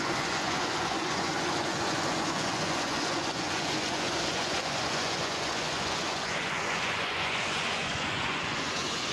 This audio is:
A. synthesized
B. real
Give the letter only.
A